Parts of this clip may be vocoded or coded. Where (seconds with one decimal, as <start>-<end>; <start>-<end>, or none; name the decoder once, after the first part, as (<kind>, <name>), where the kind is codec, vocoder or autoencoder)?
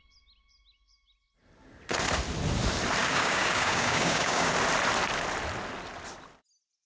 3.0-4.5 (codec, DAC)